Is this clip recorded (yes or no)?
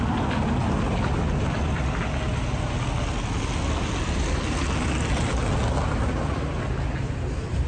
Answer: yes